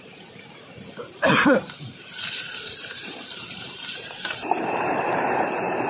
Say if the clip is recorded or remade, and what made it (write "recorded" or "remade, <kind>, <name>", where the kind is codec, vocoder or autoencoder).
remade, vocoder, BigVGAN v2